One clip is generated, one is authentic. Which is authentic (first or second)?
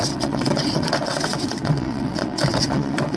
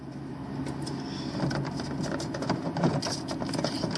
second